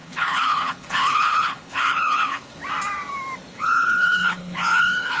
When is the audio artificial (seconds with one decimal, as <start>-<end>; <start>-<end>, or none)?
0.0-2.6; 3.5-5.2